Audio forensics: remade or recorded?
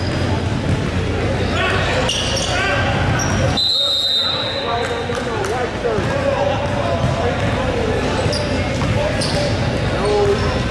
recorded